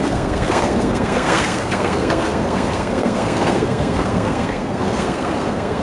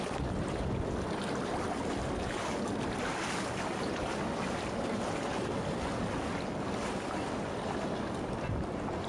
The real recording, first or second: second